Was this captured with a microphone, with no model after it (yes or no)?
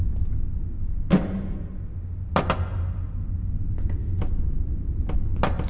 yes